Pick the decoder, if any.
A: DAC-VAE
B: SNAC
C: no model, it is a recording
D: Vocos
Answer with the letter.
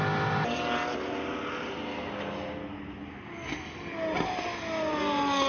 C